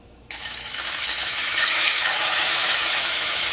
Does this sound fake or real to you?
fake